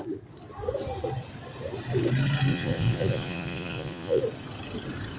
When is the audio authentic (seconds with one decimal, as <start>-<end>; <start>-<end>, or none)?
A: 0.0-2.5; 4.2-5.2